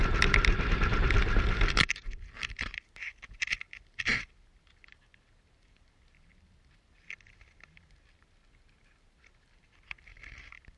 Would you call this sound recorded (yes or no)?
yes